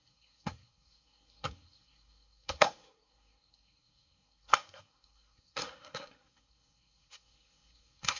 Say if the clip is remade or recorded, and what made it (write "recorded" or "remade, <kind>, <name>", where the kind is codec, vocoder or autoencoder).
remade, codec, SNAC